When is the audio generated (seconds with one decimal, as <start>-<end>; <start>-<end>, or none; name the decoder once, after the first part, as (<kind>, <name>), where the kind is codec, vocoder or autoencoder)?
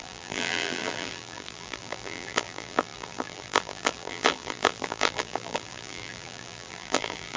0.0-7.4 (vocoder, BigVGAN v2)